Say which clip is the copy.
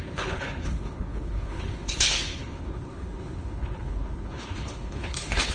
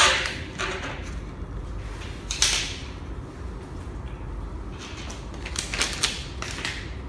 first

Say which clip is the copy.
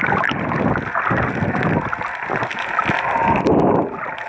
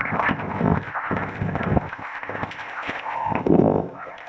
second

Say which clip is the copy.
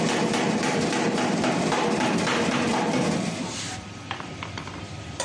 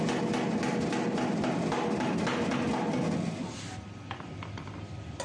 first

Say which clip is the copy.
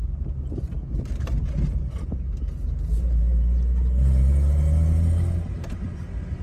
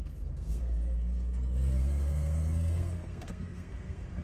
second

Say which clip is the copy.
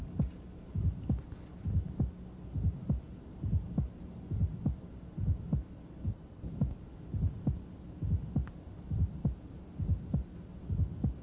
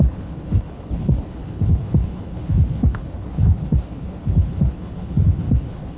second